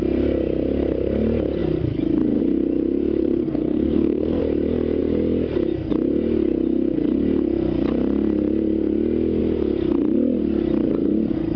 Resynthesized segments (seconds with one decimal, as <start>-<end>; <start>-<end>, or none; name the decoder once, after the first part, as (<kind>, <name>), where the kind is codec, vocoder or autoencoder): 3.2-4.4 (codec, SNAC)